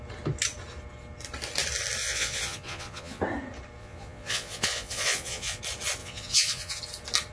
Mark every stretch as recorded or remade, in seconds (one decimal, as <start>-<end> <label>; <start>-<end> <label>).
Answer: 0.0-2.0 recorded; 2.0-3.2 remade; 3.2-3.8 recorded; 3.8-5.6 remade; 5.6-6.0 recorded; 6.0-6.8 remade; 6.8-7.3 recorded